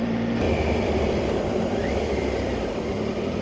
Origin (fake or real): fake